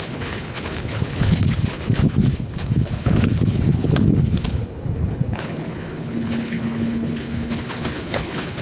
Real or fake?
fake